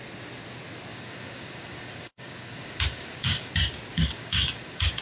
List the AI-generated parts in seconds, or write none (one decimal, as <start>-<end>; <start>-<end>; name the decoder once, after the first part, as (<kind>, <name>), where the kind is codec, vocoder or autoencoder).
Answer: 0.9-3.5 (codec, DAC); 3.9-5.0